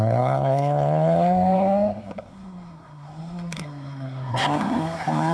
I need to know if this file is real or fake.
fake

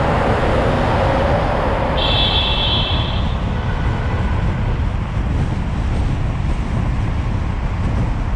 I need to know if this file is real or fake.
real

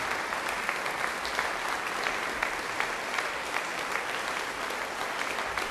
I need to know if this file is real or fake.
real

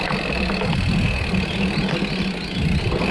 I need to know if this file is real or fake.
real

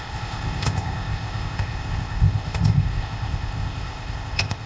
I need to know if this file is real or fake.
fake